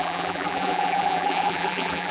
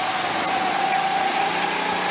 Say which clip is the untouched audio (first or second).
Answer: second